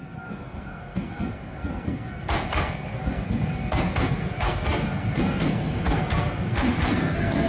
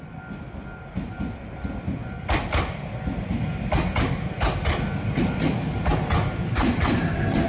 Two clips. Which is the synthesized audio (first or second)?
first